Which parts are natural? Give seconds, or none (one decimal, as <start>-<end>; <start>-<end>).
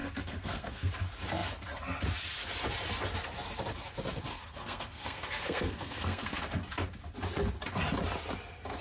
0.9-4.3; 6.4-8.8